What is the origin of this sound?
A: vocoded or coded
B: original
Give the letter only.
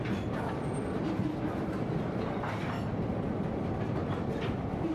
B